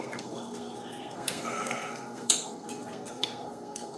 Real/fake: fake